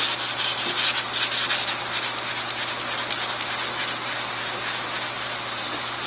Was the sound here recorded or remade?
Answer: recorded